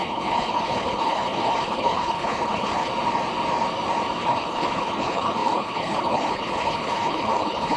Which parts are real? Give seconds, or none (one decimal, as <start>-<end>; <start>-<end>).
2.9-4.2